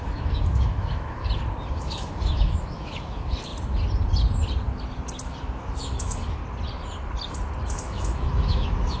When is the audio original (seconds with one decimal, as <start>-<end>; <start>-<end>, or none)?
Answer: 1.2-1.7; 3.5-5.4; 6.4-7.7